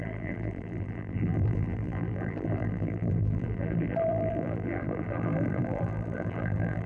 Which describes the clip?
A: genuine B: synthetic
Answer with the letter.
B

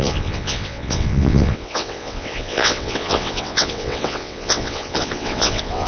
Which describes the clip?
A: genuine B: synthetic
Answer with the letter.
B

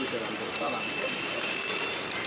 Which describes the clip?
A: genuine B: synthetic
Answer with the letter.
A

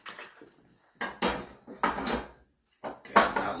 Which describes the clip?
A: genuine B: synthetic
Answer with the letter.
A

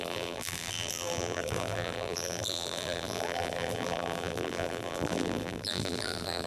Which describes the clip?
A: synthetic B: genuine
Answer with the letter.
A